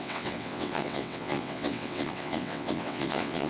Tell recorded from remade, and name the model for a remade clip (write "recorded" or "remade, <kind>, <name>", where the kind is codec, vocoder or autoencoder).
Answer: remade, vocoder, WaveNeXt